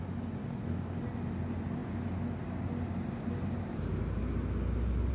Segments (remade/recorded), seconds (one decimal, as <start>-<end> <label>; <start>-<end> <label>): 0.0-0.4 recorded; 0.4-1.0 remade; 1.0-5.1 recorded